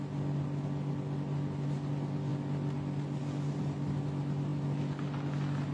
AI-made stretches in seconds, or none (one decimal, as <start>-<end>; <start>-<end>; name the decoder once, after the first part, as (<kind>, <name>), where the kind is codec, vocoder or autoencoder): none

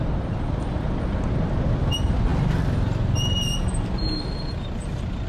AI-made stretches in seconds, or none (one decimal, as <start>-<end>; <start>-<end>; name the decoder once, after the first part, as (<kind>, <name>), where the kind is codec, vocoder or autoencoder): none

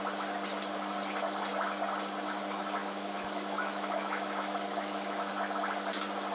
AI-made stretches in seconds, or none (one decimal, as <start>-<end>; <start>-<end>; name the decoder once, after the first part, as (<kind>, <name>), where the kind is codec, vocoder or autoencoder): 2.8-5.3 (autoencoder, DAC-VAE)

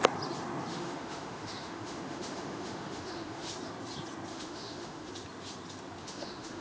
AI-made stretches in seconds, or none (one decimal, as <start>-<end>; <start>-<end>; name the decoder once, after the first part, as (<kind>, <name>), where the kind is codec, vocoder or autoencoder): 0.7-3.5 (autoencoder, DAC-VAE); 4.3-5.1; 6.0-6.6

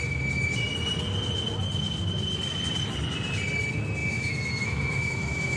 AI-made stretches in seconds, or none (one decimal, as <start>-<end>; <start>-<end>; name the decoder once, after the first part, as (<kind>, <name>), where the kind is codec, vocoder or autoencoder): 4.0-5.6 (autoencoder, DAC-VAE)

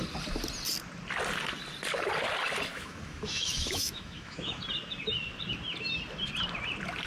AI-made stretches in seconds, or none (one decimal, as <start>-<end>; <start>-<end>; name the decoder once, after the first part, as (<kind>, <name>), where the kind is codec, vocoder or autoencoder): 2.7-4.6 (autoencoder, DAC-VAE)

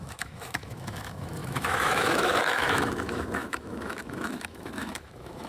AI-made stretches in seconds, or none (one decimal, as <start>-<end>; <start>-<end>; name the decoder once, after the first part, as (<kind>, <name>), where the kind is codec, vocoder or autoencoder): 0.0-5.5 (autoencoder, DAC-VAE)

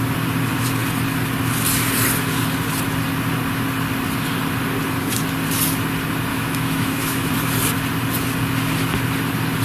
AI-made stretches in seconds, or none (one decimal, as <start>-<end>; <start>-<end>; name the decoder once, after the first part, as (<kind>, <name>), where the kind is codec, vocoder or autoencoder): 6.3-7.3 (autoencoder, DAC-VAE)